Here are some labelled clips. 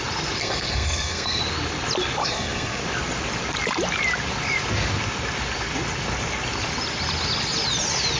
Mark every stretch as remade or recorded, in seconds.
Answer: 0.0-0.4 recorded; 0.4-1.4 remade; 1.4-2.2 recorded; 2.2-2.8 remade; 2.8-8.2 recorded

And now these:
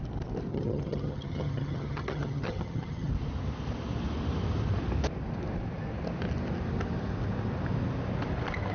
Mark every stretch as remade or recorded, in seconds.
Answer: 0.0-0.5 recorded; 0.5-3.1 remade; 3.1-8.7 recorded

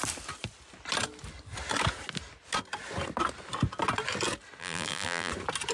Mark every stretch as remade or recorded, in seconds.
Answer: 0.0-4.6 recorded; 4.6-5.3 remade; 5.3-5.7 recorded

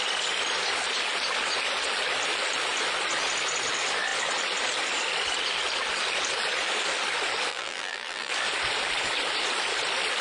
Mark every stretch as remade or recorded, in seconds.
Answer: 0.0-7.5 recorded; 7.5-8.3 remade; 8.3-10.2 recorded

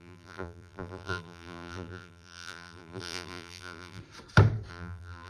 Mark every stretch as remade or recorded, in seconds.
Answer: 0.0-4.0 remade; 4.0-4.7 recorded; 4.7-5.3 remade

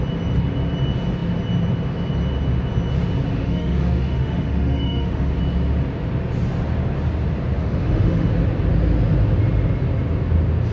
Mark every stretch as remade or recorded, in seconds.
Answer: 0.0-3.3 recorded; 3.3-5.4 remade; 5.4-7.6 recorded; 7.6-8.3 remade; 8.3-10.7 recorded